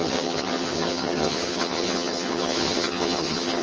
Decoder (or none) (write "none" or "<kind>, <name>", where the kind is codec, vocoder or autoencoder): vocoder, HiFi-GAN